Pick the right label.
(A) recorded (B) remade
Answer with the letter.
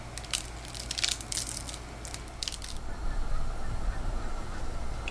A